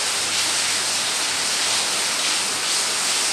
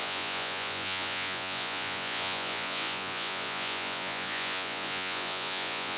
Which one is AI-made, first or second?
second